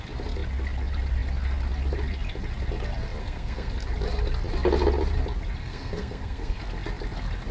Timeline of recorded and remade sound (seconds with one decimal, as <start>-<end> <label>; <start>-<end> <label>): 0.0-3.2 recorded; 3.2-3.7 remade; 3.7-5.6 recorded; 5.6-6.6 remade; 6.6-7.5 recorded